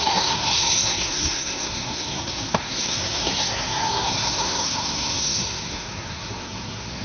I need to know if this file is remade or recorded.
remade